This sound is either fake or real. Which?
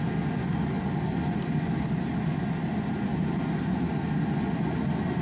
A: real